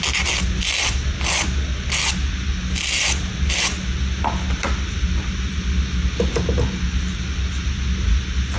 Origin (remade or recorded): recorded